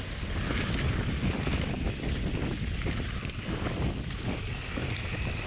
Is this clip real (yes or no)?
yes